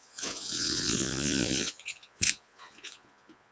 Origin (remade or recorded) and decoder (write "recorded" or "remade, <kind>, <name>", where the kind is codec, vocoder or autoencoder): remade, vocoder, Vocos